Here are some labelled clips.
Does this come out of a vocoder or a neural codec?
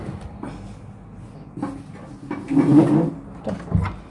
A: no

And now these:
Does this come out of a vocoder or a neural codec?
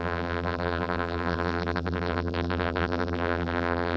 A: yes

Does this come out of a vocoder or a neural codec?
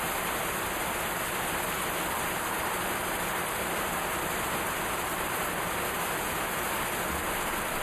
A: no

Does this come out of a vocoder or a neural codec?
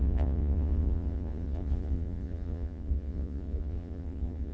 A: yes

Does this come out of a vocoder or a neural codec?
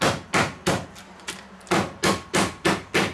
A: no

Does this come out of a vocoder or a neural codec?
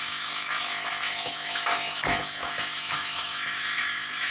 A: yes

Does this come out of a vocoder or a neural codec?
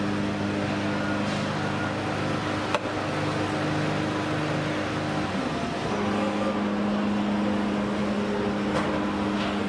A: no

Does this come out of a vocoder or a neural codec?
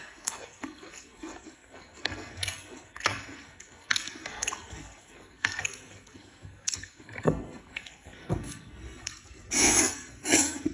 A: yes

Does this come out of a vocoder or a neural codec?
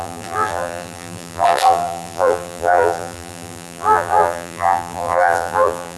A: yes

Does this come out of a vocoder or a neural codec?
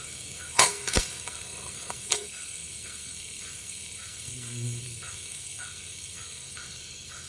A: yes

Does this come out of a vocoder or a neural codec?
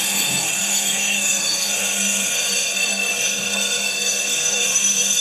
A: yes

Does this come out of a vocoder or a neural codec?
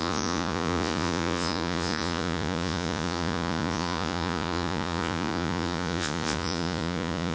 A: yes